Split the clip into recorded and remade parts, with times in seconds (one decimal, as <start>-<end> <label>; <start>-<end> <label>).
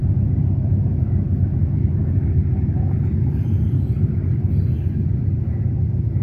0.0-6.2 recorded